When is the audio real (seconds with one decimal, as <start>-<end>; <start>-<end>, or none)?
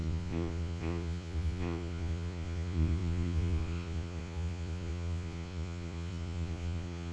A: none